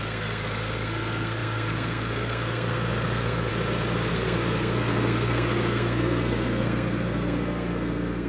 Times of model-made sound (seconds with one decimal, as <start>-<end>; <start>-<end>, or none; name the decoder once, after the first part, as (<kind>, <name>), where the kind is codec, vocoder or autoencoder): 0.0-3.5 (codec, SNAC); 4.1-8.3